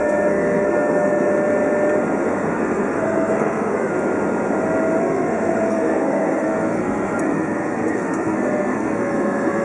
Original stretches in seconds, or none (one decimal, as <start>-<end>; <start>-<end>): 1.3-2.3; 3.9-5.0